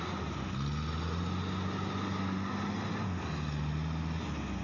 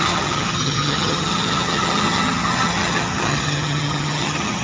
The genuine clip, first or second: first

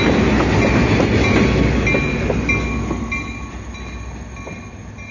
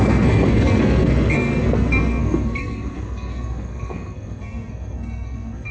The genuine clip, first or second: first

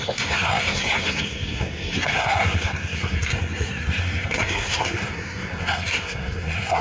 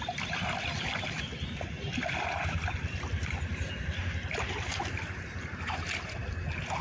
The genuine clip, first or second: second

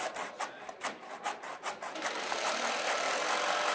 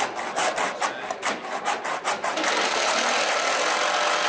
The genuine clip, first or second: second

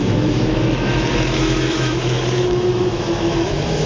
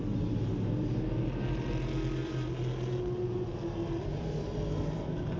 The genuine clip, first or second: second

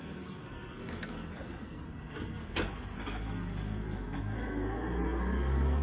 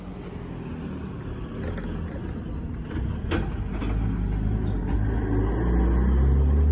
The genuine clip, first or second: second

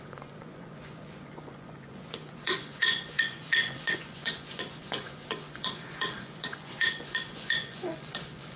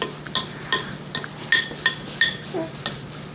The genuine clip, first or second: second